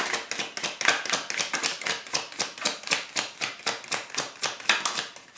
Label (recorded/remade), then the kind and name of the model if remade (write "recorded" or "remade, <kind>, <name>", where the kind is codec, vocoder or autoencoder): recorded